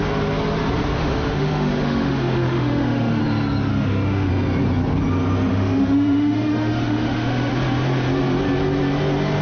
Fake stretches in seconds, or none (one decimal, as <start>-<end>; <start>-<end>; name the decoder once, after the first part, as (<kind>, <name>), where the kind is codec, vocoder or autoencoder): 1.0-3.2 (autoencoder, DAC-VAE); 3.7-4.3; 5.5-7.5